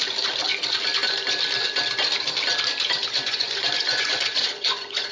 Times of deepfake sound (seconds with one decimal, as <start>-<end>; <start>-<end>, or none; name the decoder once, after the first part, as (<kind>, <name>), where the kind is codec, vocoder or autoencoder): 3.1-5.1 (vocoder, Vocos)